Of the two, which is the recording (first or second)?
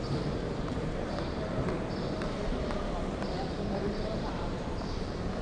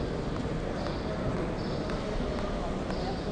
second